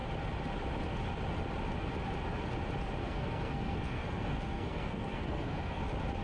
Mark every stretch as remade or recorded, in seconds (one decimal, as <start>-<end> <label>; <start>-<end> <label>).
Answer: 0.0-3.0 recorded; 3.0-5.8 remade; 5.8-6.2 recorded